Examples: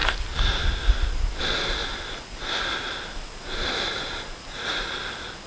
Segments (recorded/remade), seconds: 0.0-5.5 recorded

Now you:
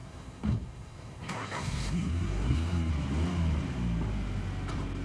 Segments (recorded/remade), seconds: 0.0-2.9 remade; 2.9-5.0 recorded

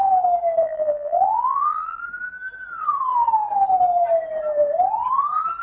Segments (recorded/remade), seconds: 0.0-0.6 recorded; 0.6-2.0 remade; 2.0-5.6 recorded

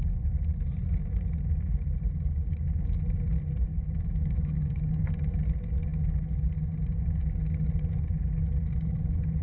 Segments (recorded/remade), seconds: 0.0-3.7 recorded; 3.7-4.8 remade; 4.8-9.4 recorded

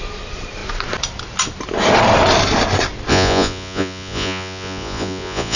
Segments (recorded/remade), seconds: 0.0-3.1 recorded; 3.1-5.6 remade

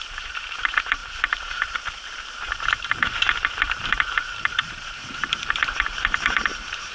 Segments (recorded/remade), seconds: 0.0-6.9 remade

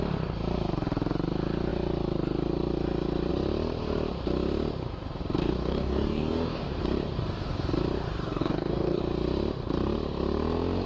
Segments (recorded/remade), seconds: 0.0-5.4 recorded; 5.4-6.8 remade; 6.8-8.2 recorded; 8.2-9.0 remade; 9.0-10.9 recorded

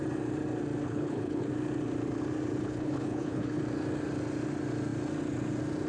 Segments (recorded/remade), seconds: 0.0-0.8 recorded; 0.8-1.5 remade; 1.5-2.6 recorded; 2.6-3.6 remade; 3.6-5.9 recorded